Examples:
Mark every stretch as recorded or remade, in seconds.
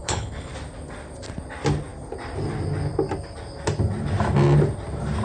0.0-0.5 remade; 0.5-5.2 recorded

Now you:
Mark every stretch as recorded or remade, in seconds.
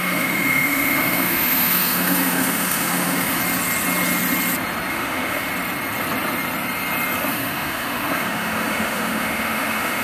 0.0-3.4 remade; 3.4-4.9 recorded; 4.9-5.5 remade; 5.5-7.3 recorded; 7.3-10.0 remade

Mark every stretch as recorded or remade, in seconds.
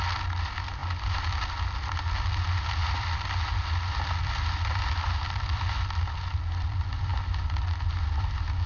0.0-8.7 recorded